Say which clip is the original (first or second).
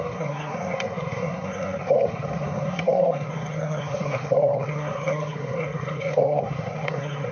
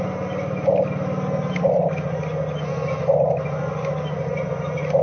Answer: second